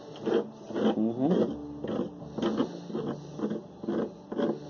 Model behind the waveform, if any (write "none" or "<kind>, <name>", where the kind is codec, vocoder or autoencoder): none